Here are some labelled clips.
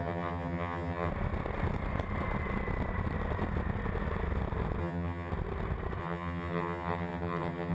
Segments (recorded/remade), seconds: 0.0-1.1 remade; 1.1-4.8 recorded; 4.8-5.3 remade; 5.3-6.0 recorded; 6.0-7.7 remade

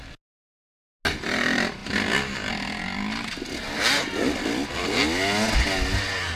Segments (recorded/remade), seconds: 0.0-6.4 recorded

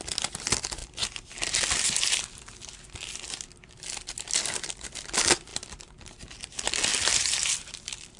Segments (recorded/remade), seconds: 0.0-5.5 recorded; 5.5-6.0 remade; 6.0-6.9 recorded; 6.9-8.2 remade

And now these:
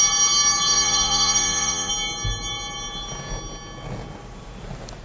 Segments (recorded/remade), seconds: 0.0-0.7 recorded; 0.7-1.9 remade; 1.9-5.0 recorded

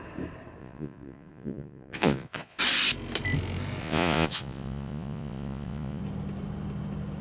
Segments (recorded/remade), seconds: 0.0-0.6 recorded; 0.6-2.6 remade; 2.6-3.8 recorded; 3.8-6.0 remade; 6.0-7.2 recorded